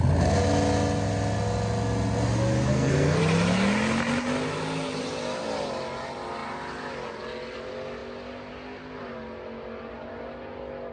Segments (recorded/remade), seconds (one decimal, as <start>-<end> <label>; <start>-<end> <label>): 0.0-2.7 recorded; 2.7-3.2 remade; 3.2-10.9 recorded